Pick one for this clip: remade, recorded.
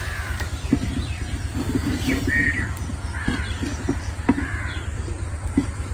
recorded